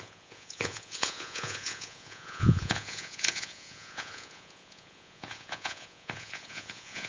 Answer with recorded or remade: remade